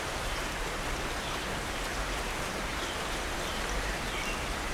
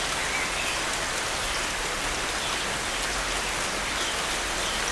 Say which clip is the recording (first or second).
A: second